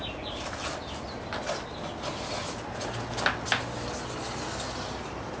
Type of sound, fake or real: real